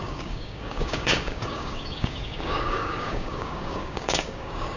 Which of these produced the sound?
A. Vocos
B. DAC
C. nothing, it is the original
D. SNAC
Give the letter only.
B